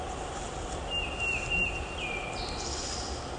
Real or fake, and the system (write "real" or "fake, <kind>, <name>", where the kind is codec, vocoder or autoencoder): real